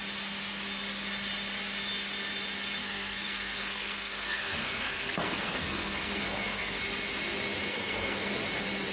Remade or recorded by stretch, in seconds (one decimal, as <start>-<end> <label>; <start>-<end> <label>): 0.0-2.8 recorded; 2.8-6.8 remade; 6.8-7.7 recorded; 7.7-8.3 remade; 8.3-8.9 recorded